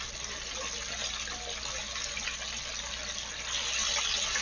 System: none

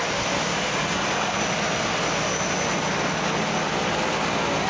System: none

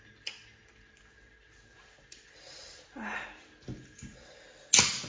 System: none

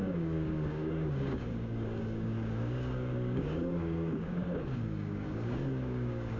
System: codec, DAC